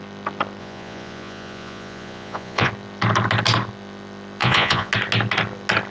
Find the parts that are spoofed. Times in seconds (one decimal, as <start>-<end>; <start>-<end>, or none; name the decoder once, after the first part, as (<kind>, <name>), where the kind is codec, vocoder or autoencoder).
0.6-2.7 (vocoder, Vocos); 4.4-4.9